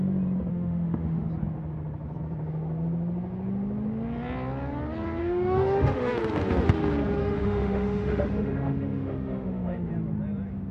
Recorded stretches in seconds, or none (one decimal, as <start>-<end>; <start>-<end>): 0.0-0.5; 1.3-5.2; 6.1-7.2; 9.9-10.7